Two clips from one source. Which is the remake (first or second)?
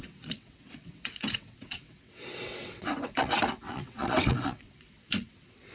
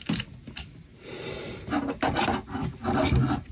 first